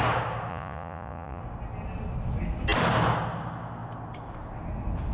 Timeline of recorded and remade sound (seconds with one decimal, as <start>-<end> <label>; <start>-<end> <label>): 0.0-0.5 recorded; 0.5-1.4 remade; 1.4-5.1 recorded